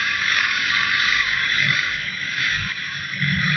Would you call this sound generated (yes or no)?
yes